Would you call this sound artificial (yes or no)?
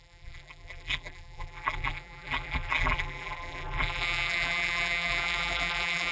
yes